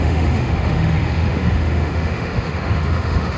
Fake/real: fake